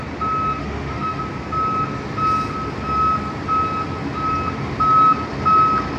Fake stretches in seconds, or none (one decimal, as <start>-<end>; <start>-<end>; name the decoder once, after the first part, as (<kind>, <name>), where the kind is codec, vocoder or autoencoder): 0.6-1.2 (autoencoder, DAC-VAE)